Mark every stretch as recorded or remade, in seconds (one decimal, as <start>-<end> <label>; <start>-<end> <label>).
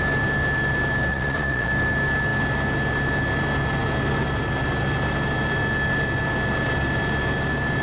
0.0-1.1 recorded; 1.1-1.7 remade; 1.7-7.8 recorded